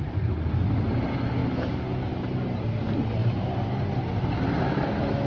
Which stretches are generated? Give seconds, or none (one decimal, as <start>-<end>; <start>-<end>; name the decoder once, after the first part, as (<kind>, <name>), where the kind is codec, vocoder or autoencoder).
none